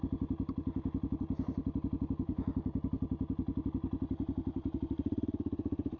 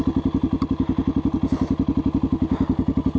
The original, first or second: second